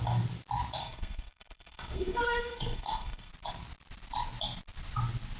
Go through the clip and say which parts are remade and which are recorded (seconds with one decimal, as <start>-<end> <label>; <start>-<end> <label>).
0.0-0.8 recorded; 0.8-3.3 remade; 3.3-5.4 recorded